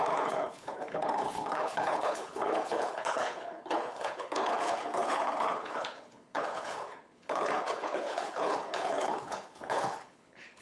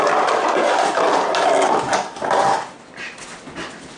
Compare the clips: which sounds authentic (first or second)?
second